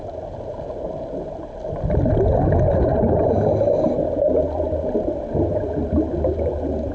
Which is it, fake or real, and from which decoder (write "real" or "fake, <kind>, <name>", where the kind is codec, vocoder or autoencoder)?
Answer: real